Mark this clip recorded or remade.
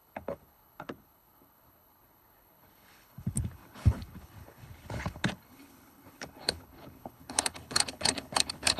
remade